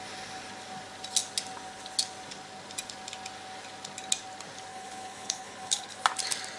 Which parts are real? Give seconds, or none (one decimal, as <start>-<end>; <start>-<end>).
0.0-4.7; 5.9-6.6